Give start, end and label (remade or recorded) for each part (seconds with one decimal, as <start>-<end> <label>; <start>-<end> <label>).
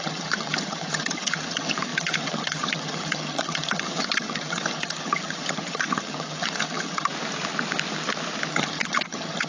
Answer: 0.0-7.1 remade; 7.1-8.5 recorded; 8.5-9.5 remade